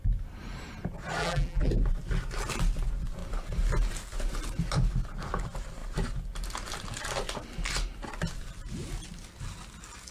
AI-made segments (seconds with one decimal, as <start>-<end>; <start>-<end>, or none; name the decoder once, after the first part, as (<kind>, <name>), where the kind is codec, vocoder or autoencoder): 1.2-1.7 (vocoder, BigVGAN v2)